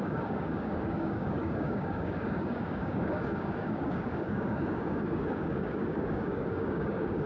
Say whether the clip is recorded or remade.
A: remade